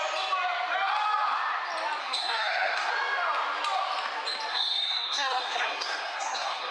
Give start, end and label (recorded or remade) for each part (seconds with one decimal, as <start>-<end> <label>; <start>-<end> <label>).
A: 0.0-2.0 recorded; 2.0-2.9 remade; 2.9-4.5 recorded; 4.5-6.7 remade